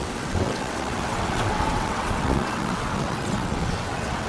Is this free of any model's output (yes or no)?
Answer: no